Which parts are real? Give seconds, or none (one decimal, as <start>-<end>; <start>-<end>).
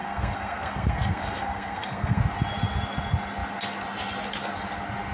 2.2-5.1